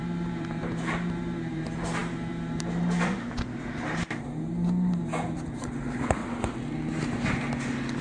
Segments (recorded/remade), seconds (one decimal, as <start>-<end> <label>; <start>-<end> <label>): 0.0-6.2 remade; 6.2-8.0 recorded